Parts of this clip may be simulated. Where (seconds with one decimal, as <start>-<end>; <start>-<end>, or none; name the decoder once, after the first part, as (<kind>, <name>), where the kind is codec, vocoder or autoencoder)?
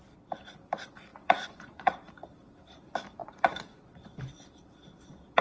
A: 1.1-2.1 (vocoder, Vocos); 3.2-3.8